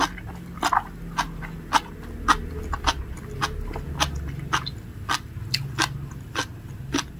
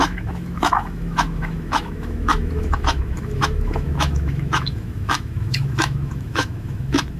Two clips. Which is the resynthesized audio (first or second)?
second